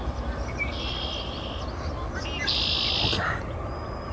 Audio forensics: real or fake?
real